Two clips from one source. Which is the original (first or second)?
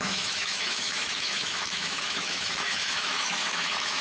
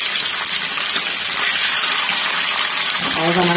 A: second